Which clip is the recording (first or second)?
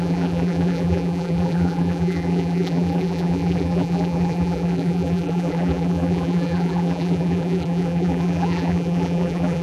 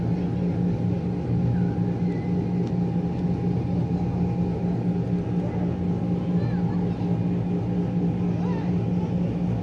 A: second